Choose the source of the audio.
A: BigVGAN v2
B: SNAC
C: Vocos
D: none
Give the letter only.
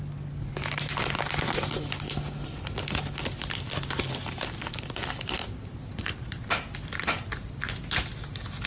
D